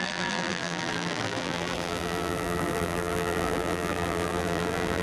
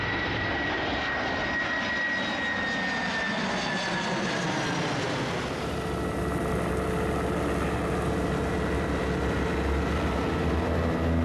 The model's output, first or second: first